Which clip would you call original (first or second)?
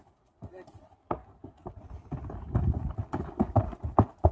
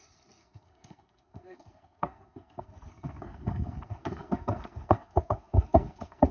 first